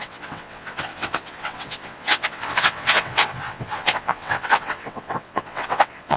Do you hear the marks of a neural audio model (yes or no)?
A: yes